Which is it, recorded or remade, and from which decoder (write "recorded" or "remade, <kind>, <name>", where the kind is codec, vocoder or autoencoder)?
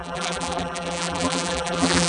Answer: remade, vocoder, BigVGAN v2